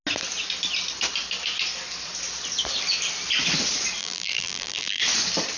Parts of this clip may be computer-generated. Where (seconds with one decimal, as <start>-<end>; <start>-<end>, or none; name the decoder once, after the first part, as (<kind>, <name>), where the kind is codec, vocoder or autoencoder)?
4.0-5.0 (vocoder, BigVGAN v2)